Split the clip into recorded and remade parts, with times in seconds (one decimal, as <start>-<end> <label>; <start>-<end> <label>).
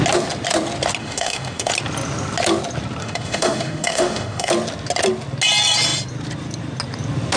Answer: 0.0-1.0 recorded; 1.0-1.7 remade; 1.7-3.0 recorded; 3.0-4.5 remade; 4.5-7.4 recorded